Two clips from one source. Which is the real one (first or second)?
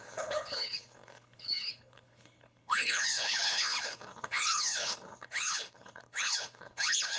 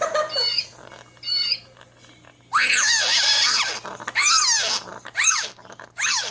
second